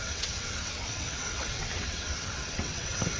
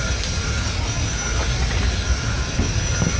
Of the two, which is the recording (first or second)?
second